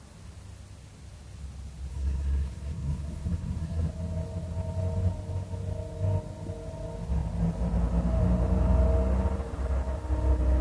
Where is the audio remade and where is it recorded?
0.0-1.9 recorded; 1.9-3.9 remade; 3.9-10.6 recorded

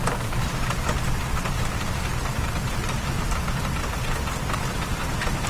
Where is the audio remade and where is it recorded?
0.0-5.5 recorded

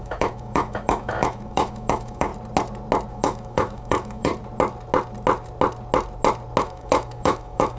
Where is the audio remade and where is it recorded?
0.0-2.3 remade; 2.3-3.1 recorded; 3.1-4.3 remade; 4.3-6.6 recorded; 6.6-7.8 remade

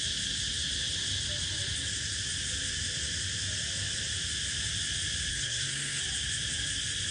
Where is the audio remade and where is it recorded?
0.0-5.3 recorded; 5.3-6.0 remade; 6.0-7.1 recorded

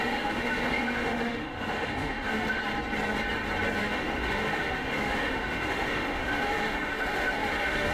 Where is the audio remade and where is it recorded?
0.0-2.6 remade; 2.6-3.8 recorded; 3.8-7.9 remade

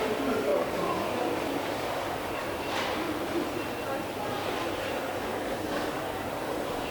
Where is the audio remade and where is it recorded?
0.0-2.4 remade; 2.4-4.7 recorded; 4.7-6.9 remade

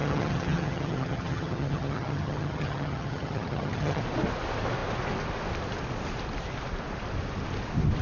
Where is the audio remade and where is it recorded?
0.0-4.0 remade; 4.0-8.0 recorded

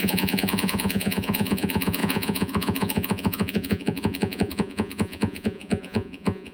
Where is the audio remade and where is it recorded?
0.0-6.5 remade